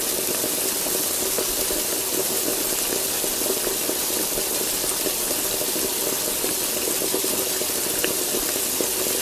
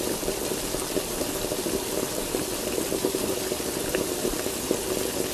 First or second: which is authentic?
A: first